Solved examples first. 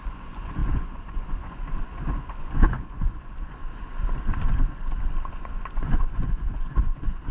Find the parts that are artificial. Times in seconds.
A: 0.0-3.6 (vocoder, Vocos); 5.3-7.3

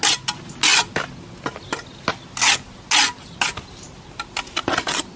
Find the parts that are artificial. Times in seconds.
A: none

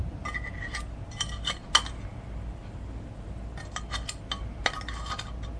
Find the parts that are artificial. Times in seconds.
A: none

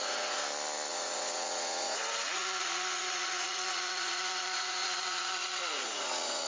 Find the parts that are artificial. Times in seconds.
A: 0.0-0.4 (vocoder, Vocos); 0.9-6.5

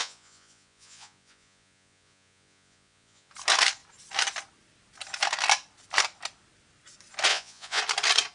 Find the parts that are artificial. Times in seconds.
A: 0.0-3.3 (vocoder, Vocos); 7.3-7.8

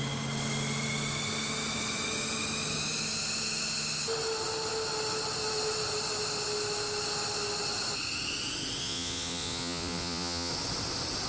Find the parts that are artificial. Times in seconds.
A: 8.8-10.5 (vocoder, Vocos)